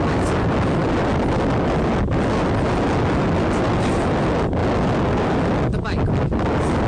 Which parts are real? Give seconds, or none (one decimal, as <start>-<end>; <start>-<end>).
0.0-6.9